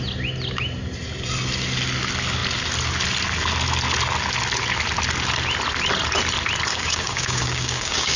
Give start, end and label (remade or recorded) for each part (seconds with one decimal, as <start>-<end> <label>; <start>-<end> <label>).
0.0-6.7 recorded; 6.7-8.2 remade